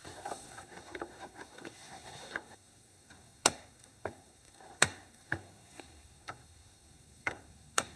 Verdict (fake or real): fake